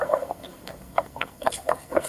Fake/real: fake